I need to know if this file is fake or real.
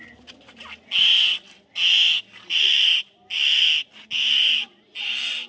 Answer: real